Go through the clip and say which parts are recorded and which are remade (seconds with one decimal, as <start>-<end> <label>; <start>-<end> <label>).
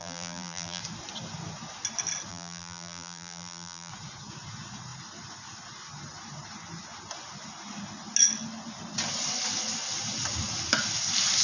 0.0-0.8 remade; 0.8-2.3 recorded; 2.3-3.9 remade; 3.9-11.4 recorded